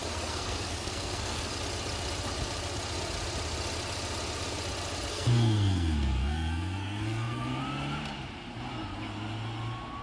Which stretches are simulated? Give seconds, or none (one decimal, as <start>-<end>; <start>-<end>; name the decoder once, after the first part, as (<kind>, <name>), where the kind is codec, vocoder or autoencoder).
0.0-1.5 (codec, SNAC); 5.1-7.6

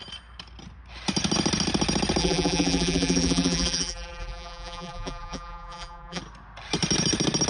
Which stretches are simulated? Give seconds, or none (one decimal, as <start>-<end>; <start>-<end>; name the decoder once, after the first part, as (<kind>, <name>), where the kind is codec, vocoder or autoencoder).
2.2-6.2 (vocoder, BigVGAN v2)

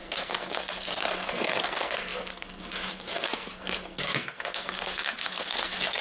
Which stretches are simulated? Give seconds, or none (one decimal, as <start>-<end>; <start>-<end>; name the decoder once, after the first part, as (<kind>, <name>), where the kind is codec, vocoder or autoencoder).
0.0-6.0 (codec, SNAC)

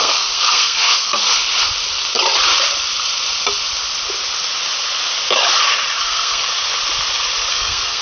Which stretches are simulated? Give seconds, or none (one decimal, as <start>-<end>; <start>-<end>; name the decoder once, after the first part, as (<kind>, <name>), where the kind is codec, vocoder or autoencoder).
0.0-1.2 (codec, SNAC); 6.0-6.4; 7.5-8.0

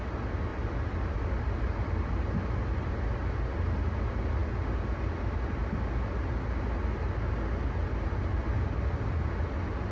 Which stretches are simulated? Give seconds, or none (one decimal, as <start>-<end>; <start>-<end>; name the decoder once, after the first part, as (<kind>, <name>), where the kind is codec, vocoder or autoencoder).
0.5-2.9 (vocoder, BigVGAN v2)

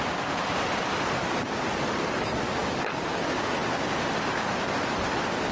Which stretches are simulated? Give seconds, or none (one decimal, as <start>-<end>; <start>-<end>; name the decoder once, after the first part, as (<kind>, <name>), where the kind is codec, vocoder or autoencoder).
none

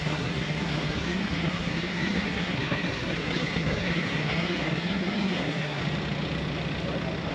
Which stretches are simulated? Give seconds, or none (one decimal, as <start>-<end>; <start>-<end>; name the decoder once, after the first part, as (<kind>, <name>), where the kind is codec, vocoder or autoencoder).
0.0-5.8 (codec, SNAC)